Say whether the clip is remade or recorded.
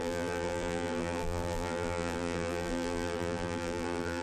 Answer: remade